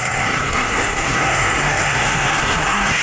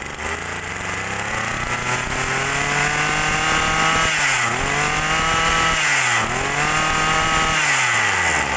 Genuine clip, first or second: second